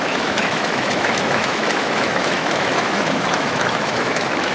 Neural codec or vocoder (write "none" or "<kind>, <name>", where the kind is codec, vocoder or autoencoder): autoencoder, DAC-VAE